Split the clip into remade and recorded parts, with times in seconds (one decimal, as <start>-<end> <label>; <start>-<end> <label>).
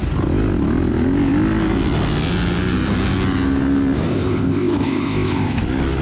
0.0-4.1 recorded; 4.1-5.6 remade; 5.6-6.0 recorded